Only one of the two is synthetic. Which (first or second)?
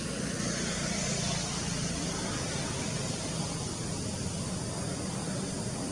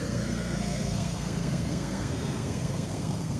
second